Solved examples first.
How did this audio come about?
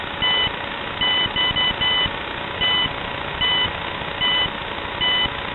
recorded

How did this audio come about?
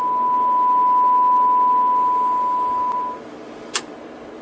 recorded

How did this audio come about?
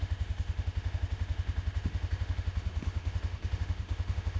remade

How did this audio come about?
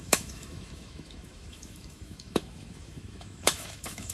remade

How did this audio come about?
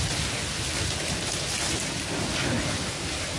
recorded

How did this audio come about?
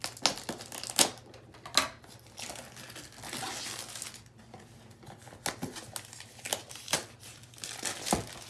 recorded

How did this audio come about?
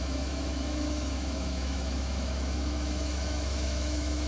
remade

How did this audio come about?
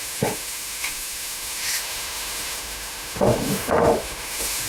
remade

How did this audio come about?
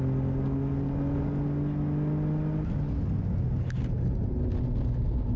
recorded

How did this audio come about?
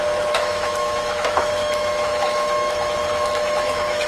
remade